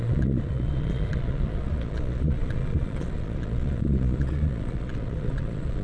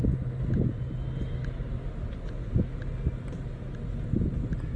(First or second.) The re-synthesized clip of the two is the first